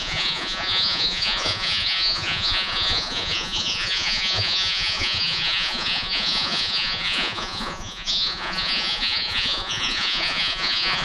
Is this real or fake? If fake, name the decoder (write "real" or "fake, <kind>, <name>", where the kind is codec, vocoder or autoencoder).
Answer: fake, vocoder, Vocos